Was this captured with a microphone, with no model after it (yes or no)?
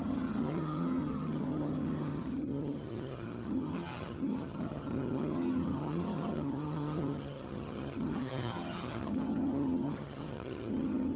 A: no